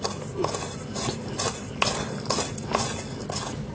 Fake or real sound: real